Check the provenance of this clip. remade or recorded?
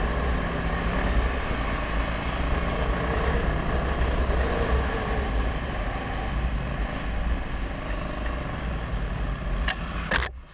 recorded